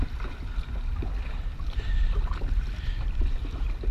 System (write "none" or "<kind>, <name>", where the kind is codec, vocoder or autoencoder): none